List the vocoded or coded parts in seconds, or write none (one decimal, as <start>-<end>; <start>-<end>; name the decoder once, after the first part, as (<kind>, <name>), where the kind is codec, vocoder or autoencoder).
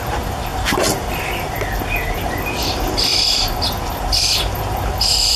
0.5-1.6 (vocoder, BigVGAN v2)